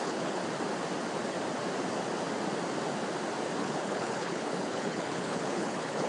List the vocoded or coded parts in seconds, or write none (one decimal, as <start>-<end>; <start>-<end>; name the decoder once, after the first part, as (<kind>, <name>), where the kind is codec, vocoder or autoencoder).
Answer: 0.0-0.4 (codec, HILCodec); 3.6-6.1